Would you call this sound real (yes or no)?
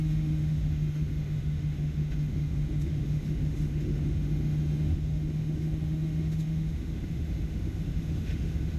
no